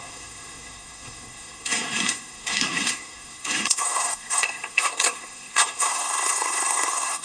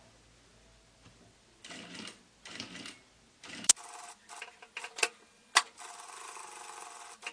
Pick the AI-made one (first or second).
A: first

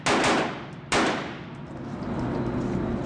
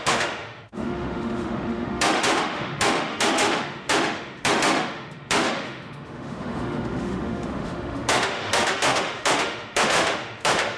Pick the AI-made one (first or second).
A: second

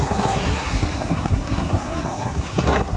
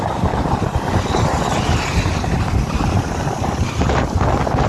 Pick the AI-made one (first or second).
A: first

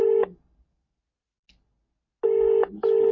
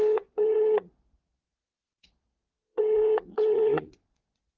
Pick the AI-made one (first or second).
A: second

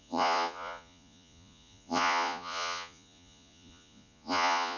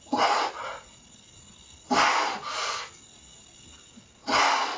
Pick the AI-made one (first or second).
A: first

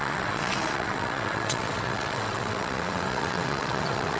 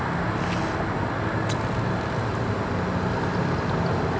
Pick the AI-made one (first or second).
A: first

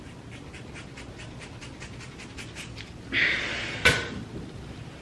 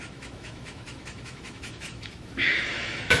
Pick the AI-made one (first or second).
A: second